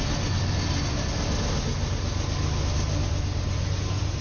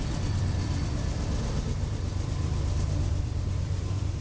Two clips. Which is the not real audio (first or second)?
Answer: second